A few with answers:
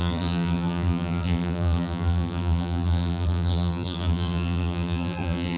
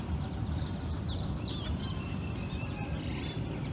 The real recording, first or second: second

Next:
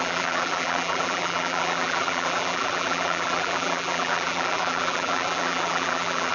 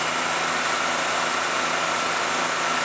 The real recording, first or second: second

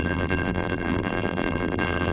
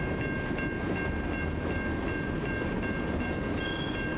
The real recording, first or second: second